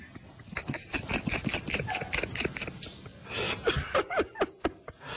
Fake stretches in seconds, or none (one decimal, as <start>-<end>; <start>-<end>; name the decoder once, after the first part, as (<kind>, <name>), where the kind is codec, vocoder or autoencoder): none